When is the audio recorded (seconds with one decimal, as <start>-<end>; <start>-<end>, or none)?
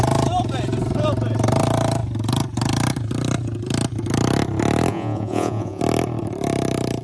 0.0-4.9; 5.8-7.0